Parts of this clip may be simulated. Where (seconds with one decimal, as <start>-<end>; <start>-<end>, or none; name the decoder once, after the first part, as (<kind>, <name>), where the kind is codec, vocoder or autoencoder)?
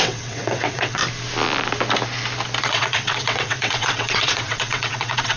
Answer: 0.0-1.0 (vocoder, WaveNeXt); 2.6-5.4